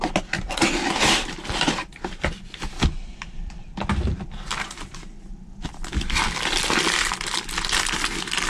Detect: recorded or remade remade